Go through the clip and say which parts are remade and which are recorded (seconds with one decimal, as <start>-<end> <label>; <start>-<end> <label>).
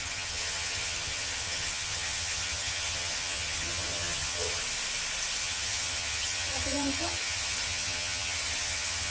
0.0-4.6 remade; 4.6-5.4 recorded; 5.4-9.1 remade